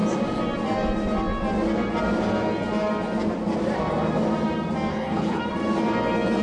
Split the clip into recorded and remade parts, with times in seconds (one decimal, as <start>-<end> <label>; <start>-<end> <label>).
0.0-4.9 recorded; 4.9-5.4 remade; 5.4-6.4 recorded